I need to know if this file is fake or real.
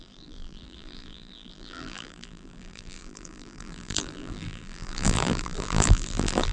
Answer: fake